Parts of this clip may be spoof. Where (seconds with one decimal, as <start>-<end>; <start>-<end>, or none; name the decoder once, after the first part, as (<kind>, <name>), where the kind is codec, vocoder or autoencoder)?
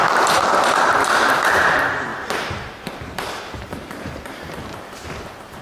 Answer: 0.0-2.1 (vocoder, BigVGAN v2); 2.9-5.6